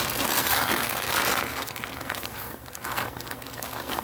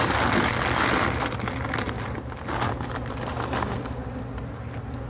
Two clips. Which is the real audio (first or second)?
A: second